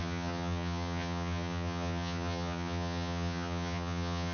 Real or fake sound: fake